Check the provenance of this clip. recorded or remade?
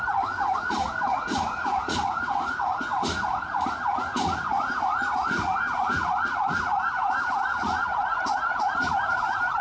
remade